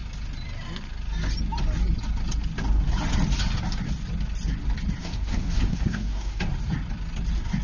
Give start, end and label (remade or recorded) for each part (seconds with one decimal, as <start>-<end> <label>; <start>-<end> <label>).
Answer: 0.0-5.0 recorded; 5.0-6.4 remade; 6.4-7.6 recorded